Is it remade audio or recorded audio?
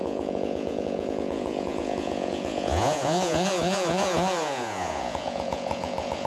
remade